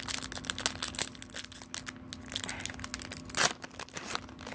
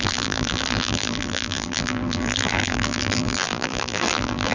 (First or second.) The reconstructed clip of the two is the second